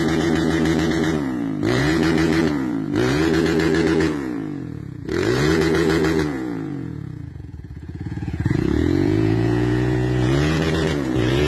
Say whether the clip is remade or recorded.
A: remade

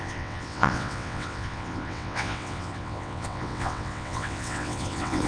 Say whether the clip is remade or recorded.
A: remade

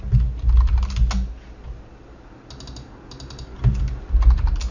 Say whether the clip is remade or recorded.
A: recorded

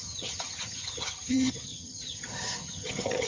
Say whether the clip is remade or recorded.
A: remade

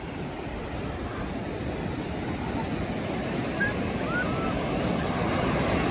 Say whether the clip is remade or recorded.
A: recorded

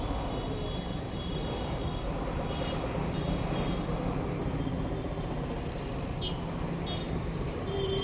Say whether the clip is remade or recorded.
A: recorded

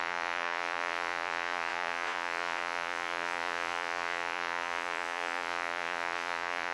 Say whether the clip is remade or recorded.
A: remade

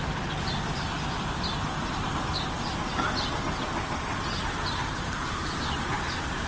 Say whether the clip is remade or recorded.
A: recorded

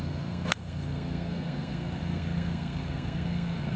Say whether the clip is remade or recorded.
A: remade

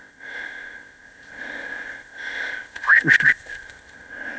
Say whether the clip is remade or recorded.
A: remade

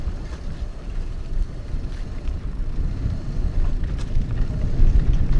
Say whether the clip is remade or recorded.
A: recorded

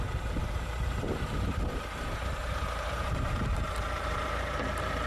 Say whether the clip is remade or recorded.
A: remade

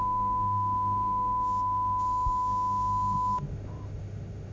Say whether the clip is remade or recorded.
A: remade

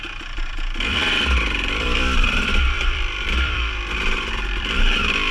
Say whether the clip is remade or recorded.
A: remade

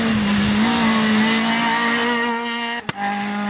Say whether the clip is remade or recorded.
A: recorded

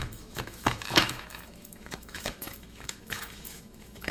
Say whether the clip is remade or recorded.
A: remade